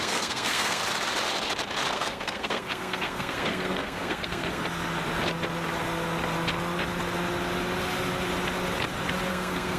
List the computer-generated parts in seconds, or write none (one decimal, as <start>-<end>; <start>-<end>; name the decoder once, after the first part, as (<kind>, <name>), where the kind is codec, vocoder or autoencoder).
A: 0.0-0.8 (codec, SNAC); 1.9-4.6; 9.3-9.8